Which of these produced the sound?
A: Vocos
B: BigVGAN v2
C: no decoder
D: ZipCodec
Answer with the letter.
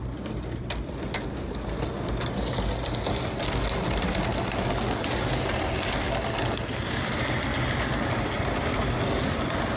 C